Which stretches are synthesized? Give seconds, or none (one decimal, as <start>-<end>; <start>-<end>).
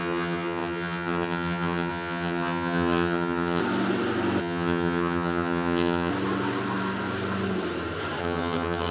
0.0-3.6; 4.4-6.1; 8.2-8.9